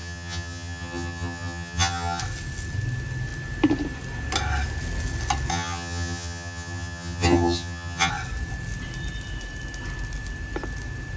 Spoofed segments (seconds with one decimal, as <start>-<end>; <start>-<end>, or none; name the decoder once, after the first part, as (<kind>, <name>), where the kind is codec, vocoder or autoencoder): 0.0-2.2 (vocoder, HiFi-GAN); 5.5-8.1